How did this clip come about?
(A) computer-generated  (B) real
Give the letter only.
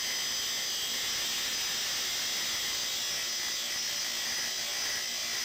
B